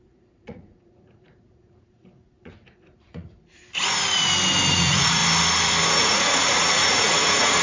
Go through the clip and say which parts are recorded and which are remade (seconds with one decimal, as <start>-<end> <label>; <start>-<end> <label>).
0.0-3.6 remade; 3.6-4.7 recorded; 4.7-5.2 remade; 5.2-5.9 recorded; 5.9-7.6 remade